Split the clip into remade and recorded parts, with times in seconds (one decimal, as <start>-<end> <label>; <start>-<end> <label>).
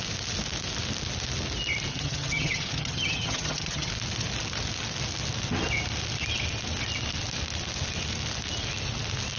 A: 0.0-1.9 recorded; 1.9-3.9 remade; 3.9-9.4 recorded